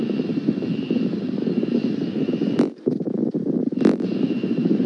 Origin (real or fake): fake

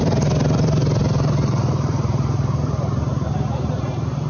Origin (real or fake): fake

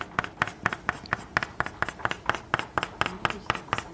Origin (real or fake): real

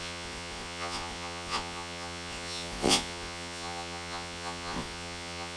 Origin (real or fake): fake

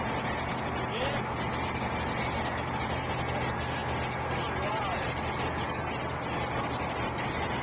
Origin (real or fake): real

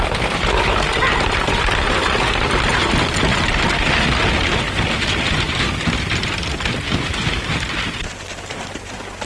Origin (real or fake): real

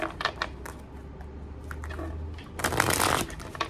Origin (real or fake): real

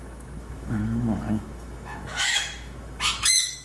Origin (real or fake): fake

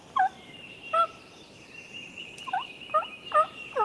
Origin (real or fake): fake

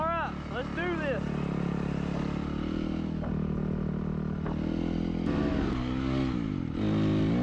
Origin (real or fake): real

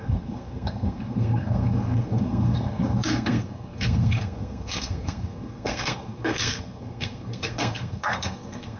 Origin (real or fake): fake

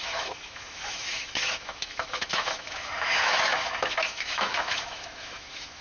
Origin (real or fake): fake